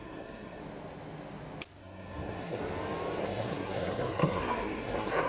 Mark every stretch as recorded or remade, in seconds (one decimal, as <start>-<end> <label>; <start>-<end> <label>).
0.0-0.6 remade; 0.6-1.8 recorded; 1.8-2.6 remade; 2.6-3.2 recorded; 3.2-5.3 remade